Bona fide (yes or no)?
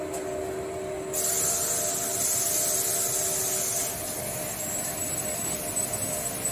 yes